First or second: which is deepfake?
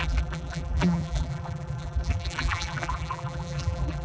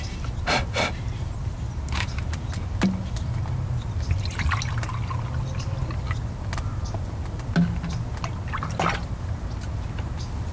first